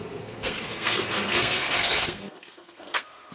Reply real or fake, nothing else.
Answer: fake